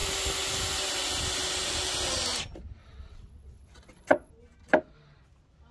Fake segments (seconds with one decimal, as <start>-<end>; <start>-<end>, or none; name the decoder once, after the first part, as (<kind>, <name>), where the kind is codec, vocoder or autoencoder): 2.8-4.3 (vocoder, WaveNeXt)